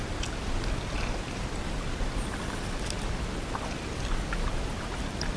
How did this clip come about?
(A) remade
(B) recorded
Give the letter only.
B